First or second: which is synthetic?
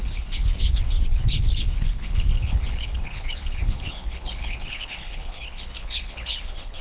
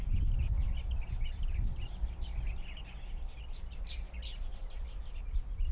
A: first